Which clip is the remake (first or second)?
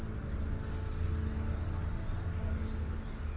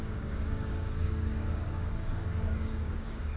second